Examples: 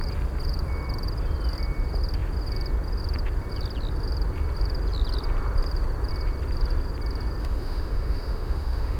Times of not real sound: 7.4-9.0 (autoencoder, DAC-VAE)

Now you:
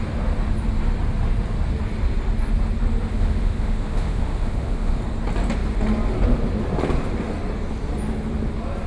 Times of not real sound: 3.1-5.0 (autoencoder, DAC-VAE)

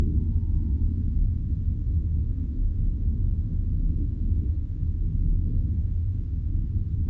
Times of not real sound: 1.2-4.8 (autoencoder, DAC-VAE); 5.3-6.5

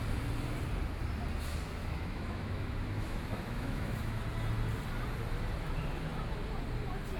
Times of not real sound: 1.8-4.2 (autoencoder, DAC-VAE)

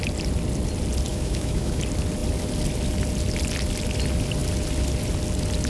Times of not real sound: 1.1-1.8 (autoencoder, DAC-VAE)

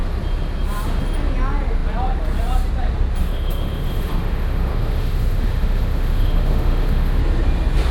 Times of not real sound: 3.2-7.2 (autoencoder, DAC-VAE)